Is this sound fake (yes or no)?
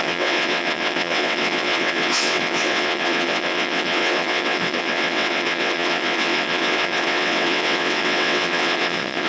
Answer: yes